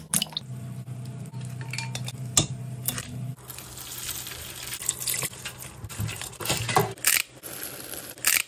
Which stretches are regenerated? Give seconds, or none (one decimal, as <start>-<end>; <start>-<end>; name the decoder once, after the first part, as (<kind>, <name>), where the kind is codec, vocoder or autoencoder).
none